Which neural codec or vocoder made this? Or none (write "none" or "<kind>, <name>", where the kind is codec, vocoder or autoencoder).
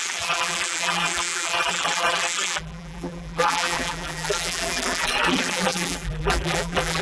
vocoder, BigVGAN v2